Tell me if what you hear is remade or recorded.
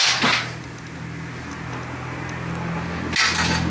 recorded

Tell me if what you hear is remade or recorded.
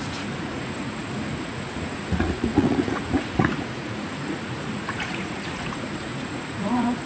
remade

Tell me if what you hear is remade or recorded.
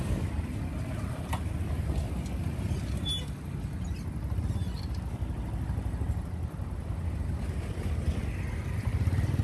recorded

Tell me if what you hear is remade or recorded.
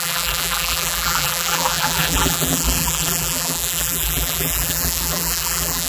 remade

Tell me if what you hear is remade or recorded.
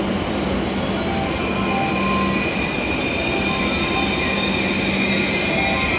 recorded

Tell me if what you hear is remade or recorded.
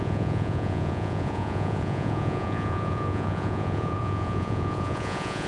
remade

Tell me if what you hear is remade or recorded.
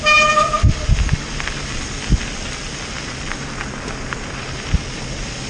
recorded